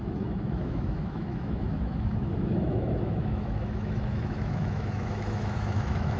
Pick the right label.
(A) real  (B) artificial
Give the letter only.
B